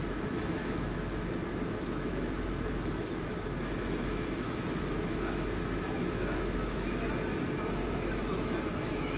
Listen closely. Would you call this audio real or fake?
fake